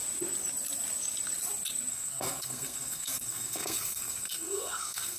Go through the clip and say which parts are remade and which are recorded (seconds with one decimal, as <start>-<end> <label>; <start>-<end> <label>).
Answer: 0.0-1.9 recorded; 1.9-5.2 remade